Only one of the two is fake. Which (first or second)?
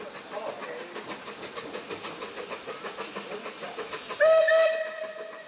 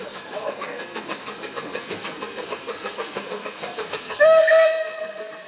second